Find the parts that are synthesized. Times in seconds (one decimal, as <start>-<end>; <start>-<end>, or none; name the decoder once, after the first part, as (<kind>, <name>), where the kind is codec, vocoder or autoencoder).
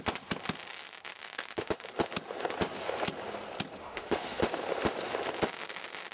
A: 1.2-1.7 (autoencoder, DAC-VAE); 3.8-4.4